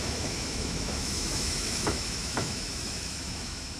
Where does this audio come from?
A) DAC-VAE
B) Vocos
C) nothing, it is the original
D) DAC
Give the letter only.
A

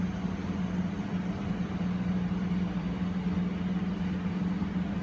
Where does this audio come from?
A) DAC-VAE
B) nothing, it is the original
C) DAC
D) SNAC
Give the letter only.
B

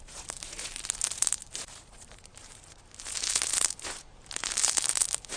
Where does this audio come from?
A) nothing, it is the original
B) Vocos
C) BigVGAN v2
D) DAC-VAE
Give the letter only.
C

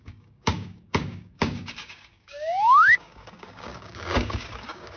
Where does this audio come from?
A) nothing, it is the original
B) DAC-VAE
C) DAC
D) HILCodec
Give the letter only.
C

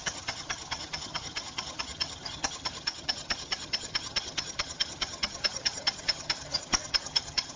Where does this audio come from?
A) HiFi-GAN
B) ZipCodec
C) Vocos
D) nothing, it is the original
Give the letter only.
A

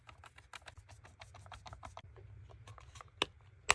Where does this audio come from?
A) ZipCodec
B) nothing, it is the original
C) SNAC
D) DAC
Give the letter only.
B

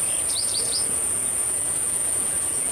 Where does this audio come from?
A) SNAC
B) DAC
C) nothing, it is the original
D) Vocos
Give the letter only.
D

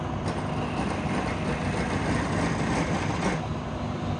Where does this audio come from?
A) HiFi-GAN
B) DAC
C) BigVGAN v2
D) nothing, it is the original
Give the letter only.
D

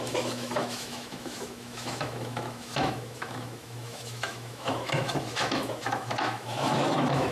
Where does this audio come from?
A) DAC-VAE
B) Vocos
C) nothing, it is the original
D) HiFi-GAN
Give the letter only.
A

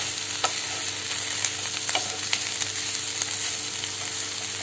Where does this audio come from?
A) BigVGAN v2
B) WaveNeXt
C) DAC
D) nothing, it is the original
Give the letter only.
D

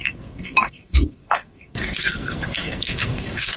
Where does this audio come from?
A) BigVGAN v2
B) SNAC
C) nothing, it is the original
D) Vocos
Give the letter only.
B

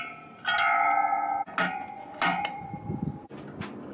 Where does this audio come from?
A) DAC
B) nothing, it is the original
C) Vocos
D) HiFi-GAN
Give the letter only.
B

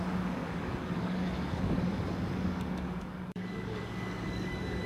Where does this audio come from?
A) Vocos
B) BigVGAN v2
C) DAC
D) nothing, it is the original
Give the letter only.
C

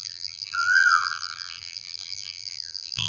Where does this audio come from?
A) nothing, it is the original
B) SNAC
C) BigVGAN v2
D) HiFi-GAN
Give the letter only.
C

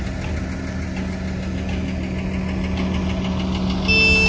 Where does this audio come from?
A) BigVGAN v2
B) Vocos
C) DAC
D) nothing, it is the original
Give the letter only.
D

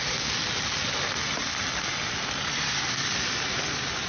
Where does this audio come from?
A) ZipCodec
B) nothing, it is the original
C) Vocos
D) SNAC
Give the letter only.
B